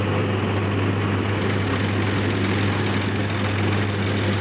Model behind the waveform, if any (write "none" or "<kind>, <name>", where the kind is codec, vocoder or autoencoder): none